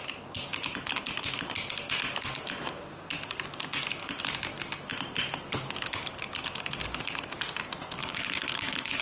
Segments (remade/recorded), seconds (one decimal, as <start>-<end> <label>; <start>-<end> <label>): 0.0-8.0 recorded; 8.0-9.0 remade

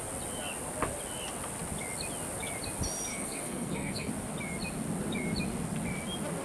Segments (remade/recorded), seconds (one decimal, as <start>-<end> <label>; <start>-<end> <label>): 0.0-3.1 recorded; 3.1-4.1 remade; 4.1-6.4 recorded

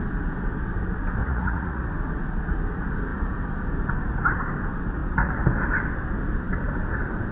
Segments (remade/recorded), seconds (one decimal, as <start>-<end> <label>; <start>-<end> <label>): 0.0-1.2 recorded; 1.2-1.8 remade; 1.8-7.3 recorded

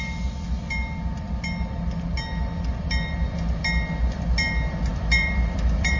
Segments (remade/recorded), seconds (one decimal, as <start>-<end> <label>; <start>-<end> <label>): 0.0-4.9 recorded; 4.9-6.0 remade

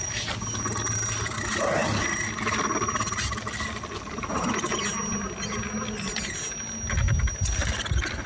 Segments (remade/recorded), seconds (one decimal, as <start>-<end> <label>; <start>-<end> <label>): 0.0-8.3 recorded

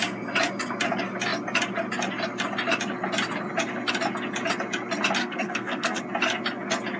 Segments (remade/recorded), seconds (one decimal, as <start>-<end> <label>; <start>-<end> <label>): 0.0-5.2 recorded; 5.2-6.0 remade; 6.0-7.0 recorded